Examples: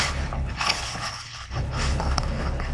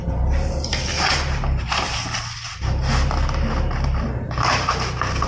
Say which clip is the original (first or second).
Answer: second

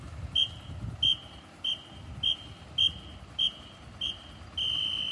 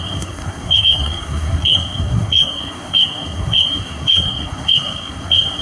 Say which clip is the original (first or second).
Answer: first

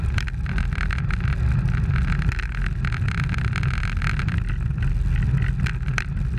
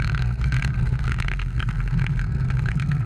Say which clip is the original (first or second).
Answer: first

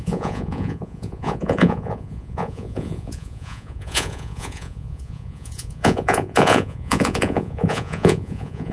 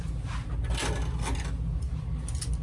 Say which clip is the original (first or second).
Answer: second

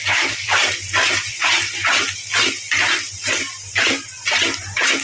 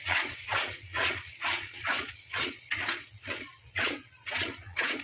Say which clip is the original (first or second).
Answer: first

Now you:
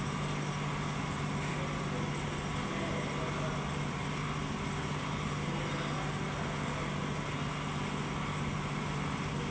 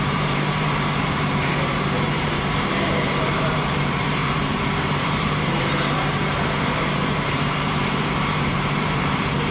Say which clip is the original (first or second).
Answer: first